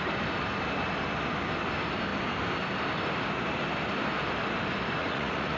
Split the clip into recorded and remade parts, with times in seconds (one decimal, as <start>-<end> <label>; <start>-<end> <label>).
0.0-5.0 recorded; 5.0-5.6 remade